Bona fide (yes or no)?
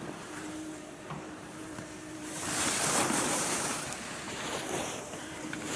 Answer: no